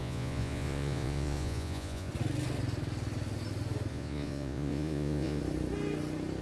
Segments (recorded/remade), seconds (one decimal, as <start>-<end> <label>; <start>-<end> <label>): 0.0-2.1 remade; 2.1-3.9 recorded; 3.9-5.4 remade; 5.4-6.4 recorded